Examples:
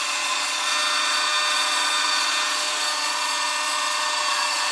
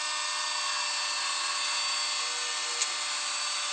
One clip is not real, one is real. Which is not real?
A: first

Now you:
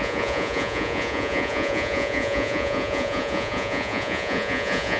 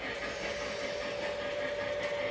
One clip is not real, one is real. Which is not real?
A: first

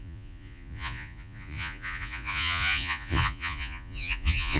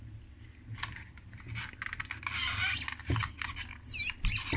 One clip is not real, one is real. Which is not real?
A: first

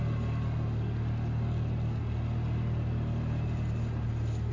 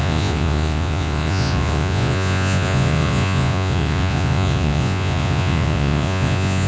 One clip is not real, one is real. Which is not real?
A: second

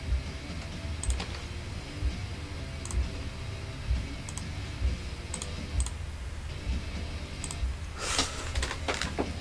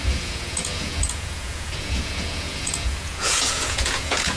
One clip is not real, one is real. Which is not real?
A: second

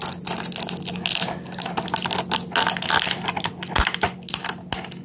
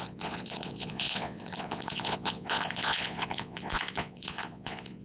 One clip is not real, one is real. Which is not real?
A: second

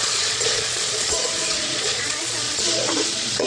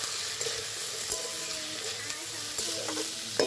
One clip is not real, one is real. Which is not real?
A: first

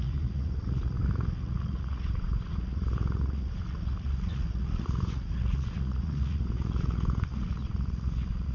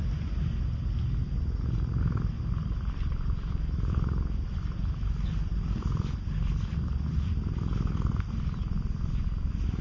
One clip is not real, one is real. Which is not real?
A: first